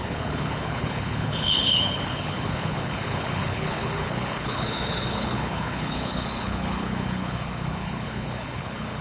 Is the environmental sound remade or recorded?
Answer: remade